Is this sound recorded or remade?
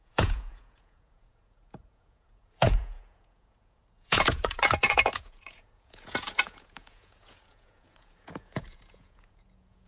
remade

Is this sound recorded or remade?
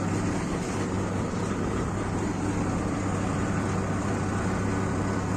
recorded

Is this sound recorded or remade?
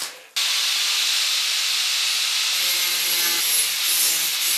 recorded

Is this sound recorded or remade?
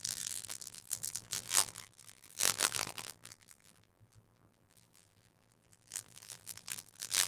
remade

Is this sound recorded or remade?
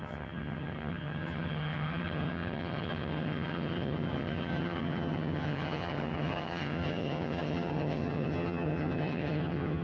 remade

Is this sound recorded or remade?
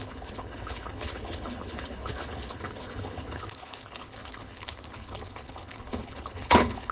remade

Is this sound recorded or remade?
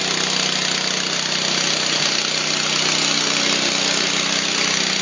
recorded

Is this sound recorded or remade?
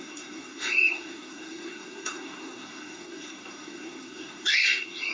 remade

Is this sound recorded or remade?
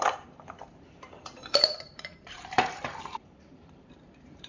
remade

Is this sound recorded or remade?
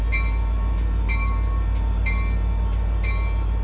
recorded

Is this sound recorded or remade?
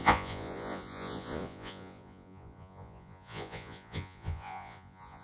remade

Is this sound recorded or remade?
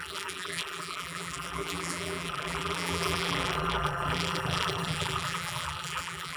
remade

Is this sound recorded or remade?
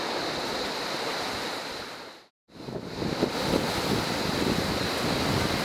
remade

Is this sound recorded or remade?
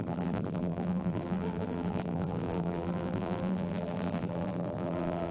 remade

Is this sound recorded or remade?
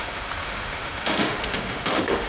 remade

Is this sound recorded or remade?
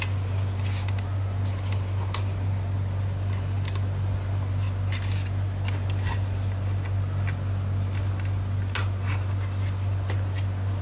recorded